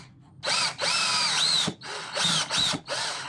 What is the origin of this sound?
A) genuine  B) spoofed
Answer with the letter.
A